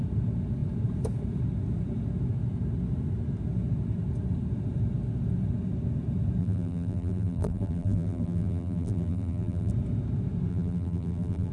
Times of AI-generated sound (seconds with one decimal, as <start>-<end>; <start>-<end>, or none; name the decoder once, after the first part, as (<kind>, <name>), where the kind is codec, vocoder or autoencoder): 6.4-9.7 (vocoder, BigVGAN v2); 10.5-11.5